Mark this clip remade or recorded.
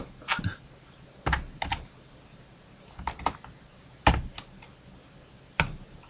recorded